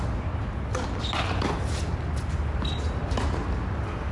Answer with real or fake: real